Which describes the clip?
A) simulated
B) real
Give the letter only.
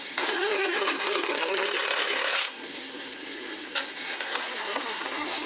A